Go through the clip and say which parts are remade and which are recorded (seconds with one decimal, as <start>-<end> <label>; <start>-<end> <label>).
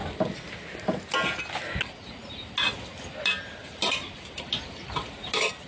0.0-3.3 recorded; 3.3-5.1 remade; 5.1-5.7 recorded